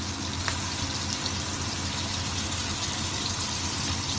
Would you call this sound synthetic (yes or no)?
no